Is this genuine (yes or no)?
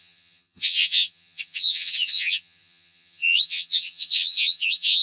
no